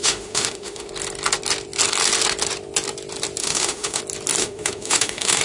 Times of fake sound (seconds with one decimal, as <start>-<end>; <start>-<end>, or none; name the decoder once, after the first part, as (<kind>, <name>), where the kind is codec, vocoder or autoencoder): 0.0-0.9 (autoencoder, DAC-VAE); 3.4-4.0; 4.4-5.4